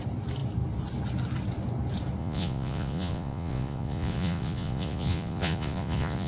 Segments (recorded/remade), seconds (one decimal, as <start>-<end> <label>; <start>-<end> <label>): 0.0-2.2 recorded; 2.2-6.3 remade